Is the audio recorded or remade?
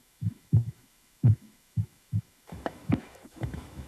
remade